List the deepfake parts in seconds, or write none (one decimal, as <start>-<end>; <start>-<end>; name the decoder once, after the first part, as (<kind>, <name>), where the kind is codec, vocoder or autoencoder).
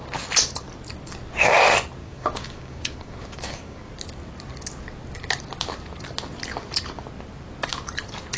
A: 2.0-3.9 (codec, DAC)